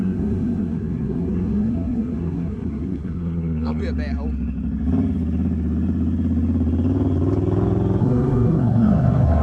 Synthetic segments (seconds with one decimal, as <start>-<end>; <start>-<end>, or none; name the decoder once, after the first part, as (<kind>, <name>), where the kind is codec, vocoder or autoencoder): 0.0-3.8 (codec, SNAC); 8.0-9.4